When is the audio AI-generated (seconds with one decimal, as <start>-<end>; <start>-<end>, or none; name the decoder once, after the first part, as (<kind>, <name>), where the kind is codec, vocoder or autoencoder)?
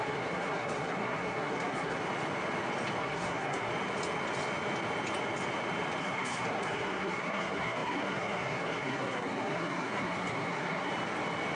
0.0-2.0 (codec, SNAC); 3.0-3.7; 6.0-10.9